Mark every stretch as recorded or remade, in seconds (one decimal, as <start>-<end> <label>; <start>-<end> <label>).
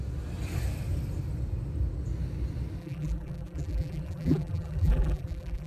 0.0-2.8 recorded; 2.8-5.7 remade